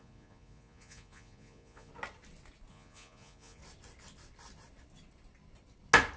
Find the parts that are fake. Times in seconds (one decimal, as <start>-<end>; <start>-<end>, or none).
0.0-1.9; 2.7-3.6

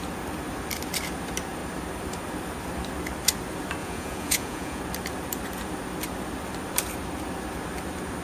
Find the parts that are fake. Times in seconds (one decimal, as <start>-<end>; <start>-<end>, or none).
3.8-4.8

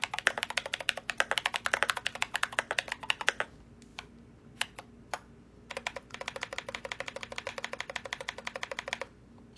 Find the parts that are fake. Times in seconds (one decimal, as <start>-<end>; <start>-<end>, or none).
none

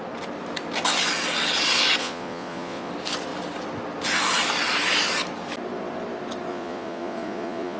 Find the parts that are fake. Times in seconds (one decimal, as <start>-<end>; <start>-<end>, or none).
2.0-2.9; 6.5-7.8

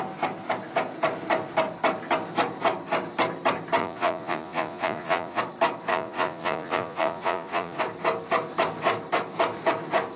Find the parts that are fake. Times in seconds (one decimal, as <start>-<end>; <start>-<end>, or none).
3.8-5.4; 5.9-7.8

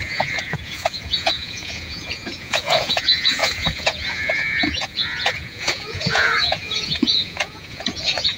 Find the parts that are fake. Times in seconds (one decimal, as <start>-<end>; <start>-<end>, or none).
0.0-8.4

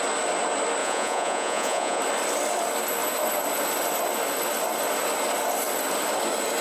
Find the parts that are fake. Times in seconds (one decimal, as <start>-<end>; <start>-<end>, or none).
0.8-2.0